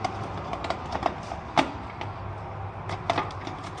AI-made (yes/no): no